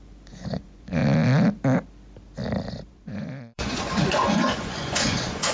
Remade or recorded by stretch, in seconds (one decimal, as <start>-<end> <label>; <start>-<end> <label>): 0.0-1.0 remade; 1.0-2.9 recorded; 2.9-5.5 remade